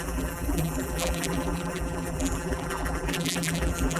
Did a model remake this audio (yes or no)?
yes